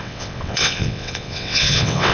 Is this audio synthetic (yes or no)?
yes